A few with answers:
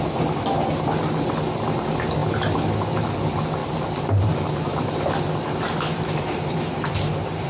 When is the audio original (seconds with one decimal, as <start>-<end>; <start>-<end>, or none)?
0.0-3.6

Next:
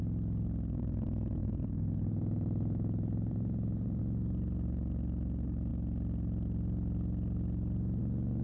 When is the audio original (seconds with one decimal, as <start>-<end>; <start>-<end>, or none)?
0.0-1.4; 4.0-8.4

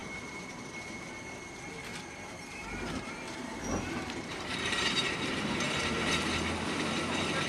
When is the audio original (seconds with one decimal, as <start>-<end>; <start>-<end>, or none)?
0.6-1.9; 6.1-7.5

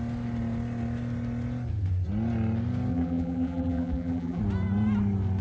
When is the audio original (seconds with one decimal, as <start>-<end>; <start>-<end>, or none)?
0.0-2.9; 4.4-5.4

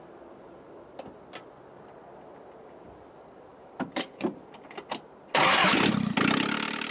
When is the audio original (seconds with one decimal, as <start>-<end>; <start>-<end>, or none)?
0.0-3.5; 4.9-6.9

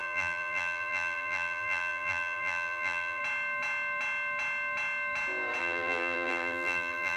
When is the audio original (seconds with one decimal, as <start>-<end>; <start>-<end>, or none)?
3.2-5.6

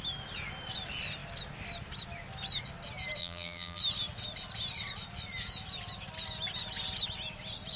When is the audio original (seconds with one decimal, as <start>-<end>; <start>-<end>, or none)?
0.0-3.2; 3.8-7.8